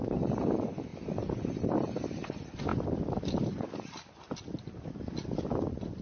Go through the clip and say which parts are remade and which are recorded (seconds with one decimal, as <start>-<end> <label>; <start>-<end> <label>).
0.0-6.0 recorded